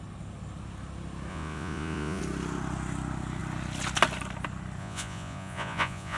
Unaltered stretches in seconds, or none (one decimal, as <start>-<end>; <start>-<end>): 0.0-1.3; 2.2-4.8